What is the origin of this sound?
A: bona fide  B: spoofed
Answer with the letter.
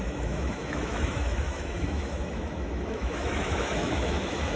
B